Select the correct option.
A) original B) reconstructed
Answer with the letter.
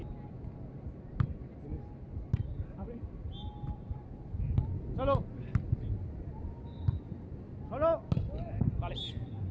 A